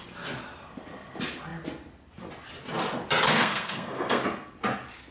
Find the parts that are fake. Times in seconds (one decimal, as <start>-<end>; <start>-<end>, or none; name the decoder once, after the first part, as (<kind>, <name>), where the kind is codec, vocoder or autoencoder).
3.3-4.2 (codec, SNAC)